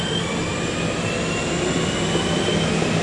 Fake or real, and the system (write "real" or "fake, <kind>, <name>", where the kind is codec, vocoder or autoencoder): real